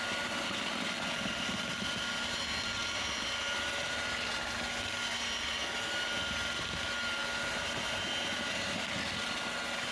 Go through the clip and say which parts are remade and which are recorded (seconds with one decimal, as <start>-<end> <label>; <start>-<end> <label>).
0.0-9.9 recorded